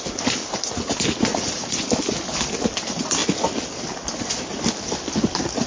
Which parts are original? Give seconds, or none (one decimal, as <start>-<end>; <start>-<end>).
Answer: 0.0-1.3; 1.9-5.7